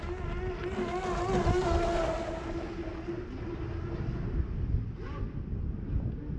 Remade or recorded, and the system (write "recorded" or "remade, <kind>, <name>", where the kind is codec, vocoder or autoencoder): recorded